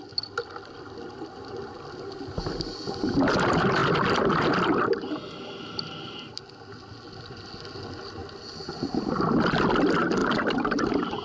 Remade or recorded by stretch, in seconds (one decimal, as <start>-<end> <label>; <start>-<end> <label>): 0.0-11.2 recorded